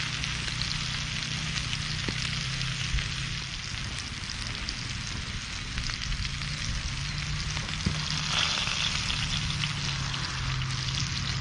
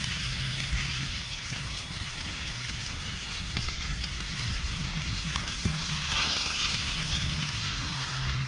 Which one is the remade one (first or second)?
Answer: second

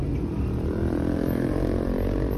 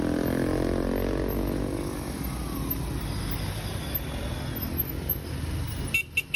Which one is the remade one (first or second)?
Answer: first